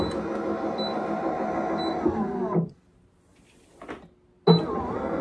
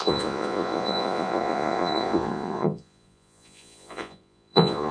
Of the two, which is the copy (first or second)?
second